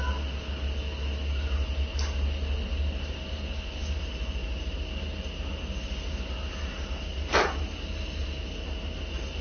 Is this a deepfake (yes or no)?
no